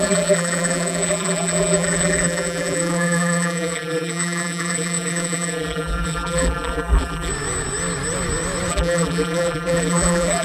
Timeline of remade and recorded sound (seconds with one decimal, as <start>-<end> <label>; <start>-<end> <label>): 0.0-7.3 remade; 7.3-8.7 recorded; 8.7-10.4 remade